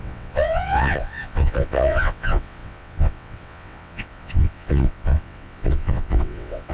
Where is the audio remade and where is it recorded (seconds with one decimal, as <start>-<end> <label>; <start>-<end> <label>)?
0.0-6.7 remade